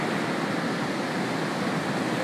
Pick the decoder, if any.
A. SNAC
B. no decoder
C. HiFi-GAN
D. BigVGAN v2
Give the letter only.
B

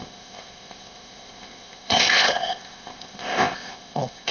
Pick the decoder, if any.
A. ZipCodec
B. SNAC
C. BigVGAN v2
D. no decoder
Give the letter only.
A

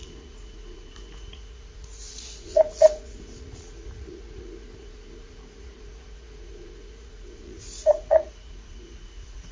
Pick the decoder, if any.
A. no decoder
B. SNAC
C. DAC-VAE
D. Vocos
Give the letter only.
D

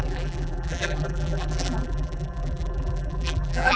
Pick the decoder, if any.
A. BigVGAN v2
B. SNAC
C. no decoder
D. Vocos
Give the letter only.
A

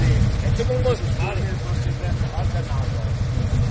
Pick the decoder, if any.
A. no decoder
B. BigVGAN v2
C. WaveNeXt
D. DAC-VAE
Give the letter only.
A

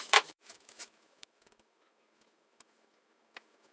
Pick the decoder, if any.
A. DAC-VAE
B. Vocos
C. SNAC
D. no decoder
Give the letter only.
A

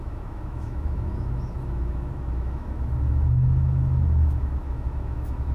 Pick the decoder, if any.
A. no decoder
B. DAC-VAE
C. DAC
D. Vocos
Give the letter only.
B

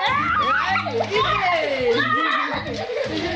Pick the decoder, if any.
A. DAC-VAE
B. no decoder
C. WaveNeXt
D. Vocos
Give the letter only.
B